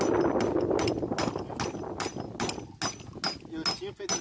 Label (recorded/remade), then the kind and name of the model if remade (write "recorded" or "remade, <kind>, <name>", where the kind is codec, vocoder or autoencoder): recorded